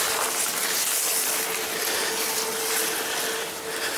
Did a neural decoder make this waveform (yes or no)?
no